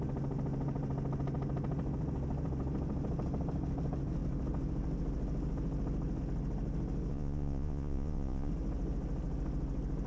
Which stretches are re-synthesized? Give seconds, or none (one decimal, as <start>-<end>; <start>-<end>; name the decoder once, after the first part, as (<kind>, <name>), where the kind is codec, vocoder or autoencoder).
7.1-8.5 (vocoder, Vocos)